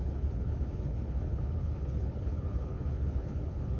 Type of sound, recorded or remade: remade